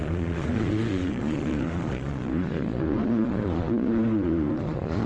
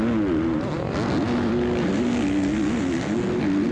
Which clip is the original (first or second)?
second